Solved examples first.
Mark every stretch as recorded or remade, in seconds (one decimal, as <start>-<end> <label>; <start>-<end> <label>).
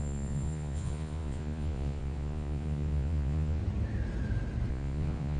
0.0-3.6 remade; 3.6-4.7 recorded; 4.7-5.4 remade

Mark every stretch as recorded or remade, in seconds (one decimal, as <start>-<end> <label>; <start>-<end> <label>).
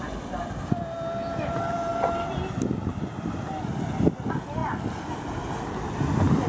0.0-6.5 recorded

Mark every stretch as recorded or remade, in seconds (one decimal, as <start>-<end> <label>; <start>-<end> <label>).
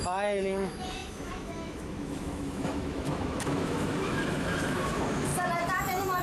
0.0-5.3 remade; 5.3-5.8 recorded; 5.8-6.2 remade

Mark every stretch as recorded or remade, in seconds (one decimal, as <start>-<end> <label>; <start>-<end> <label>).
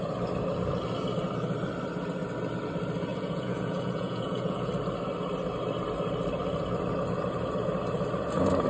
0.0-3.1 recorded; 3.1-4.7 remade; 4.7-8.7 recorded